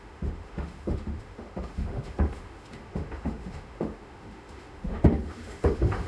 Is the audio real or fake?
fake